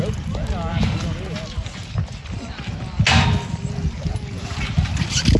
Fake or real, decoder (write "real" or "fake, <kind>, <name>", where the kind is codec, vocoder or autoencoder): real